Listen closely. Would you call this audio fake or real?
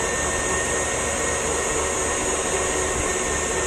real